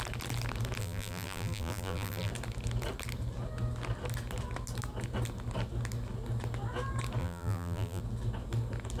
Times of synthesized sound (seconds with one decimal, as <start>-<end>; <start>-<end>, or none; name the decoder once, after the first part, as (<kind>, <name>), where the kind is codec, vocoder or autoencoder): 0.8-2.3 (vocoder, BigVGAN v2); 7.2-8.0